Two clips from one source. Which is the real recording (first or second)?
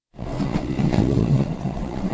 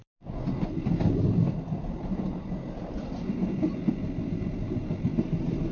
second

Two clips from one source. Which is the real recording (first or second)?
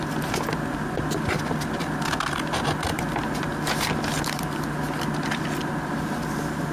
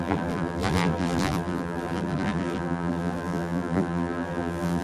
first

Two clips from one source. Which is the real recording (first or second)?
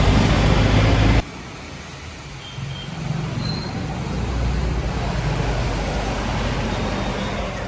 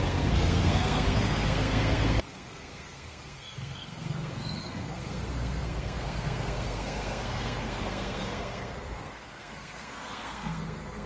first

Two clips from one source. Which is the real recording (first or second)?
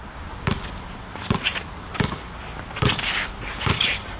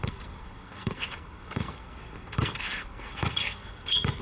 first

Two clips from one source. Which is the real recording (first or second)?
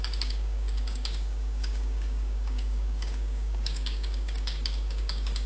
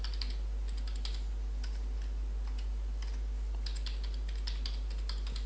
second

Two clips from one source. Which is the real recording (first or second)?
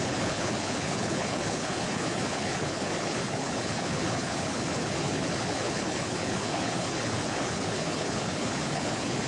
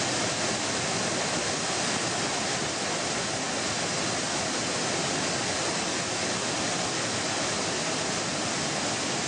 second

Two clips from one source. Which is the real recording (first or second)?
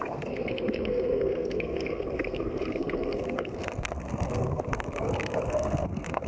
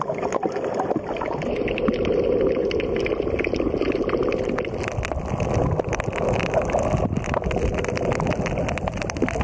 second